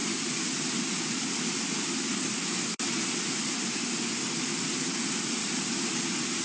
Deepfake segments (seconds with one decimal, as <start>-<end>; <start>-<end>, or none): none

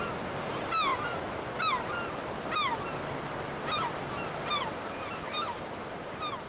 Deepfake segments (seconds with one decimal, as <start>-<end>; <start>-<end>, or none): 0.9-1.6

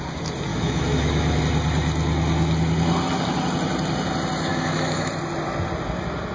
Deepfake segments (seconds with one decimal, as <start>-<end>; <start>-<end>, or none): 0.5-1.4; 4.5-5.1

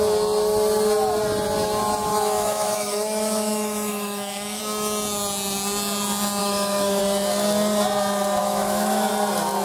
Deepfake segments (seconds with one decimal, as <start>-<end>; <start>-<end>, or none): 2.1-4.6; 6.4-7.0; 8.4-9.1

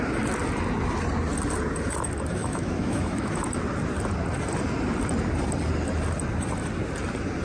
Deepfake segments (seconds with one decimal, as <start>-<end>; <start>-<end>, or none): 2.4-3.3

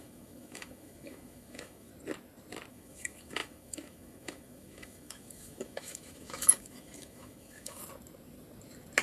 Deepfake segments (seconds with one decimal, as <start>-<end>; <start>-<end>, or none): 0.0-1.9; 2.7-7.8

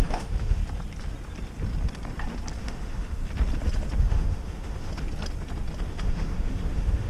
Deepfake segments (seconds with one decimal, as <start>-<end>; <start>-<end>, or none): 0.0-0.6; 2.6-3.2; 4.0-4.9; 5.9-7.1

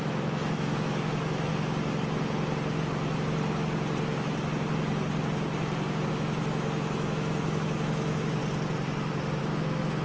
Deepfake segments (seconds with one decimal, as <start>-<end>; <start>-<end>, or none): 0.0-1.5; 6.1-8.4; 9.4-10.0